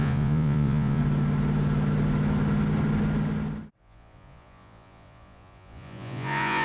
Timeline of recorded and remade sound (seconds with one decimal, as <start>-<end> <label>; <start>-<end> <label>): 0.0-1.0 remade; 1.0-3.8 recorded; 3.8-6.6 remade